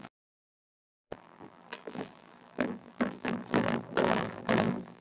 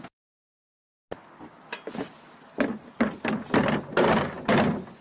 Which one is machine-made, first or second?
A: first